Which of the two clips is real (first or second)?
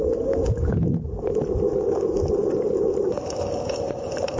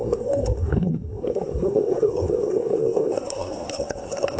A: first